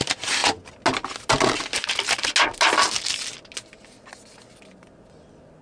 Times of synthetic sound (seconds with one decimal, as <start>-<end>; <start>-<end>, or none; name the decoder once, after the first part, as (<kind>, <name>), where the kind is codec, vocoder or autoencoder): none